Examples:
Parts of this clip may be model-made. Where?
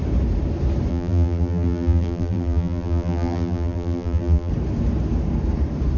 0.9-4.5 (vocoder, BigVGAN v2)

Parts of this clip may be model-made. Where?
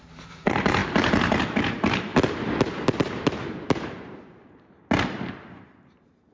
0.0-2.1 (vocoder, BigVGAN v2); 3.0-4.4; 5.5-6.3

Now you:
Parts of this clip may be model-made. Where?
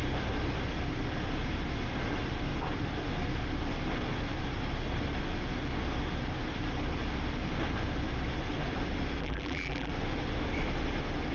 9.2-9.9 (vocoder, BigVGAN v2)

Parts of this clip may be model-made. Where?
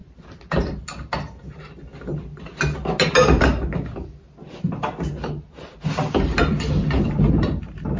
none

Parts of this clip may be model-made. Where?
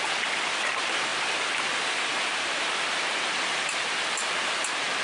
3.5-4.1 (vocoder, BigVGAN v2)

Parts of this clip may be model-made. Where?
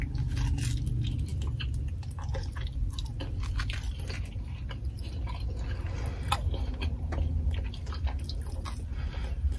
none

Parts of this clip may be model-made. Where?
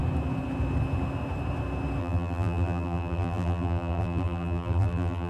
2.0-5.3 (vocoder, BigVGAN v2)